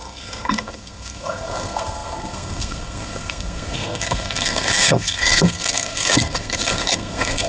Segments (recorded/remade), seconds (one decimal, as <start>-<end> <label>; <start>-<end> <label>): 0.0-7.5 remade